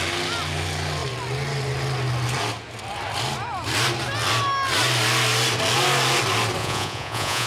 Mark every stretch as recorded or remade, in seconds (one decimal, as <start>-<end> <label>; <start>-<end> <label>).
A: 0.0-6.6 recorded; 6.6-7.5 remade